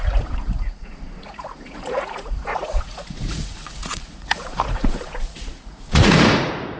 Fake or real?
fake